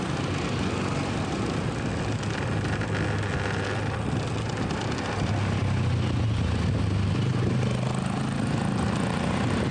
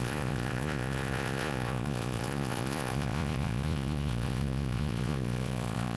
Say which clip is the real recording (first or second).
first